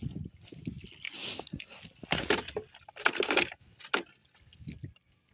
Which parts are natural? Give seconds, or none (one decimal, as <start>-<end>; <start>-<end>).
0.0-5.3

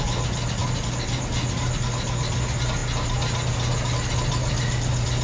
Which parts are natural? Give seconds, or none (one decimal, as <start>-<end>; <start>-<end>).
0.0-5.2

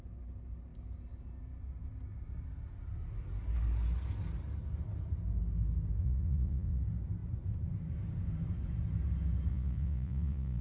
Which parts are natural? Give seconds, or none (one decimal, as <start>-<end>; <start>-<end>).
0.0-6.0; 6.8-9.5

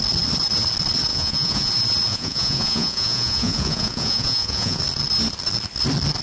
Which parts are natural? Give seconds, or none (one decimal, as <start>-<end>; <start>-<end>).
0.0-1.1; 1.7-2.1; 4.8-6.2

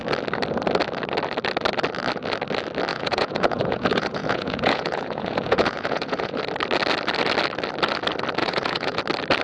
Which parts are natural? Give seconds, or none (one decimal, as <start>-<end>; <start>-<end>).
0.0-2.9; 6.4-8.4; 9.0-9.4